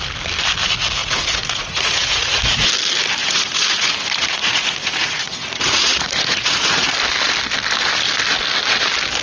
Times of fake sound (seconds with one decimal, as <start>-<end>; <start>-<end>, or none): 1.0-2.7; 3.2-6.9